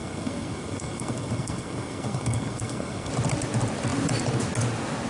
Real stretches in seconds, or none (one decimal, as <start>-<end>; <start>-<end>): 3.1-5.1